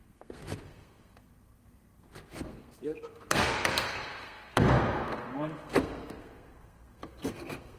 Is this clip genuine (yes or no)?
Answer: no